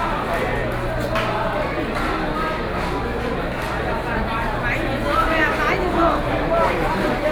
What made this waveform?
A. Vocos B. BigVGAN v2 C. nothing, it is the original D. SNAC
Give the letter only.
C